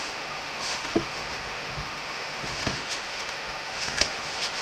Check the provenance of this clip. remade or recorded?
remade